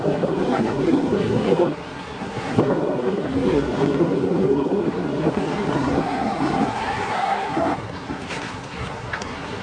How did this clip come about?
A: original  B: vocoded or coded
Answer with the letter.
B